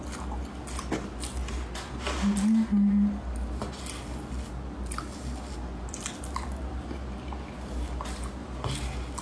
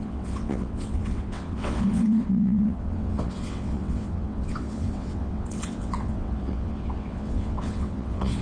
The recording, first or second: first